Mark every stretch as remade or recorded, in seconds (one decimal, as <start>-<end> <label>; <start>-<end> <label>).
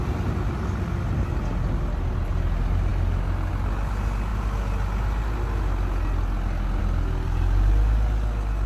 0.0-8.7 recorded